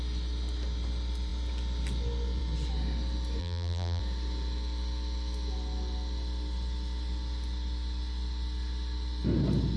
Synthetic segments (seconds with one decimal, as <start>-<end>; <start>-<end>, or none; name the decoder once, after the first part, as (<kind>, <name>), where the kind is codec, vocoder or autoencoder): 3.4-4.0 (vocoder, BigVGAN v2)